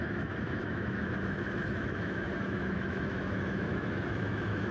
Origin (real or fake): fake